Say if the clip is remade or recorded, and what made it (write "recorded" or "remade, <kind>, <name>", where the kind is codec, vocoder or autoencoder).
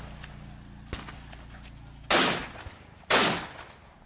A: recorded